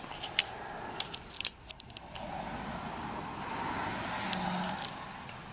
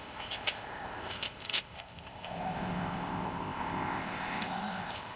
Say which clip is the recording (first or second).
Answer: first